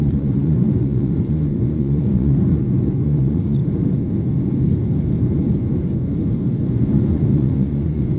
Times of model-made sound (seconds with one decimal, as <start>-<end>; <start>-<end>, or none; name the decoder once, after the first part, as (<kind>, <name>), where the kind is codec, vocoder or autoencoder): 0.0-3.6 (vocoder, Vocos); 6.5-8.2